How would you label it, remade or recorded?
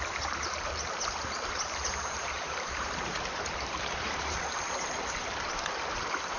remade